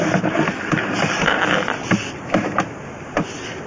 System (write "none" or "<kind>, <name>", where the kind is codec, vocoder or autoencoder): none